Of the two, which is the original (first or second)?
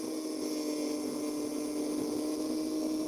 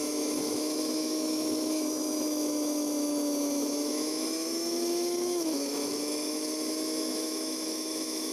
first